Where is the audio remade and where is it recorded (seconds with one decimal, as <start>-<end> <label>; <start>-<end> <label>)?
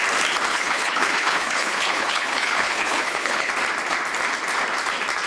0.0-0.5 recorded; 0.5-3.5 remade; 3.5-5.3 recorded